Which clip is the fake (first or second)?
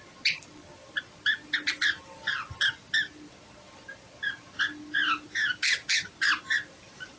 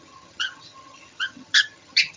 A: second